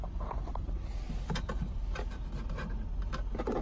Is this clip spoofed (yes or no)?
no